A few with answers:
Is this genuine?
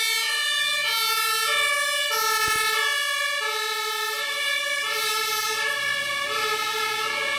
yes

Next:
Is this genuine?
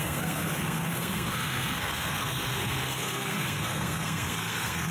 no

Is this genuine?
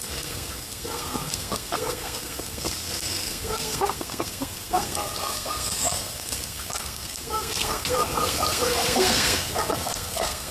no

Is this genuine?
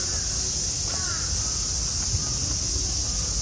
yes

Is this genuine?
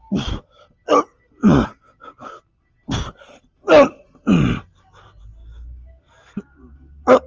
yes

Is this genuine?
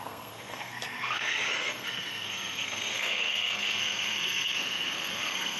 no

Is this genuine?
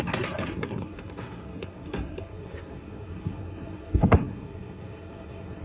no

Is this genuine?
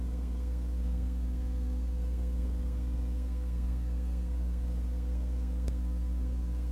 no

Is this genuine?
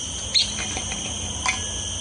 yes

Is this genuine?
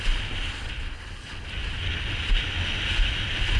yes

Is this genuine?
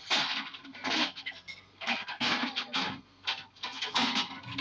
no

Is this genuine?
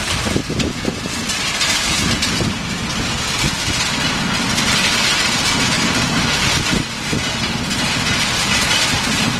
yes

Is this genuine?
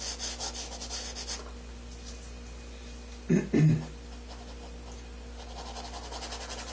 yes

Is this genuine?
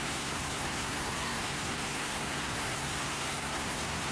no